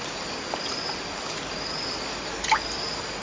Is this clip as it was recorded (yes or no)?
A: yes